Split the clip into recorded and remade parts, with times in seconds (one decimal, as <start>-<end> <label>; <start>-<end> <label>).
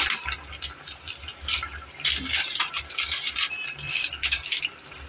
0.0-3.9 recorded; 3.9-4.6 remade; 4.6-5.1 recorded